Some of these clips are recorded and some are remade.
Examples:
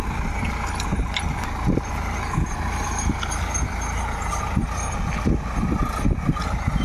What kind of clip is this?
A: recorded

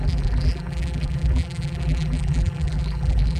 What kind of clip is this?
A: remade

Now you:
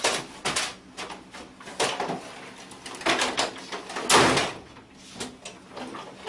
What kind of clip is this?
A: recorded